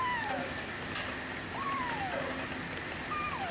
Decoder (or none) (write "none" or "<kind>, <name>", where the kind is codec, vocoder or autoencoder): none